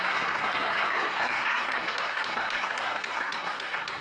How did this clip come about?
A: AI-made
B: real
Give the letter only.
A